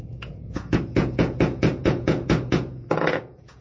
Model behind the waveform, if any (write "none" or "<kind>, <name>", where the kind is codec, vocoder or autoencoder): vocoder, Vocos